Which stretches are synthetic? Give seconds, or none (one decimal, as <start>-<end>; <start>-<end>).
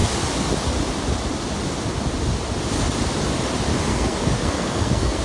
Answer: 3.9-5.2